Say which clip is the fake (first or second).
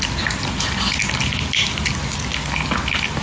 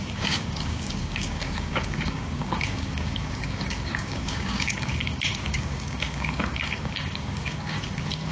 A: second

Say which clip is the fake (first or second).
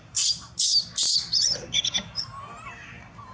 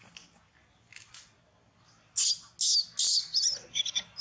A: first